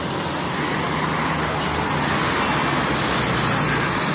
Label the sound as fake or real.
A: real